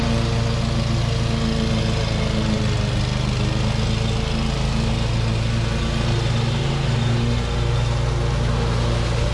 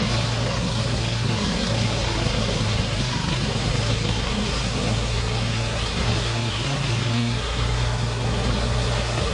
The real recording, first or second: first